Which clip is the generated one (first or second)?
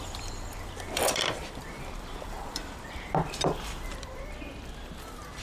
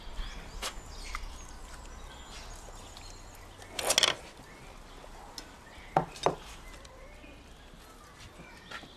first